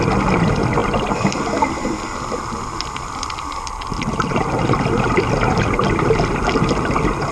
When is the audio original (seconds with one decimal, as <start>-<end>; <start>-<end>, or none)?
0.0-7.3